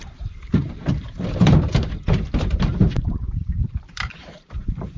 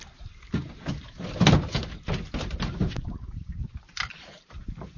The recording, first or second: second